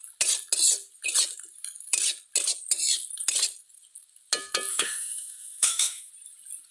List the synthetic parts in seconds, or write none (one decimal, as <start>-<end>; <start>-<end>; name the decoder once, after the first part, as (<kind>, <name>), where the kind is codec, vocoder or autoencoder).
4.7-6.1 (autoencoder, DAC-VAE)